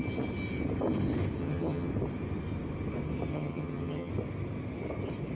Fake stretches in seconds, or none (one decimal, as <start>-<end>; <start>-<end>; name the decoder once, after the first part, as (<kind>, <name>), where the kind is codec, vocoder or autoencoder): 1.4-1.9 (vocoder, HiFi-GAN); 3.3-4.1